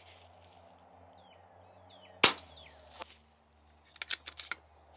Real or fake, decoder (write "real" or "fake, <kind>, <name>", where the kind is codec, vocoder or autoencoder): real